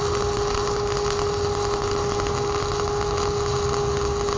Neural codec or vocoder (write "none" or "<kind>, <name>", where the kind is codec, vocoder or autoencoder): none